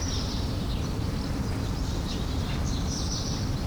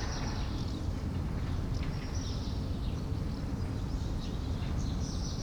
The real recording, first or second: second